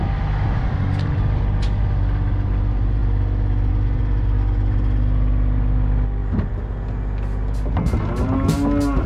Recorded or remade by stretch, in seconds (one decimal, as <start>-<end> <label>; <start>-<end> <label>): 0.0-9.1 recorded